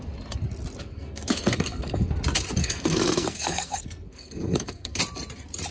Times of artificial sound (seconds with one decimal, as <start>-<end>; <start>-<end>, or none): 0.8-2.1; 2.6-5.0